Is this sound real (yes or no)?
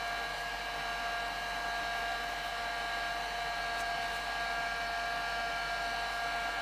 yes